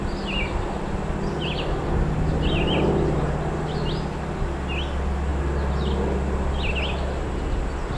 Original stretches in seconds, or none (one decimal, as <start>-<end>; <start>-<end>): 0.0-8.0